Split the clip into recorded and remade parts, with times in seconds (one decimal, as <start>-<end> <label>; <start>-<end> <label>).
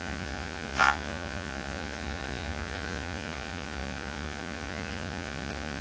0.0-5.8 remade